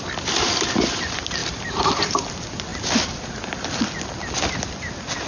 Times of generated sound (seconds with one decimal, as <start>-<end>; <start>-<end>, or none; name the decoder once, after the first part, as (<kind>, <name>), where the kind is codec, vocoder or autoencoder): 1.4-2.3 (vocoder, BigVGAN v2); 2.7-3.8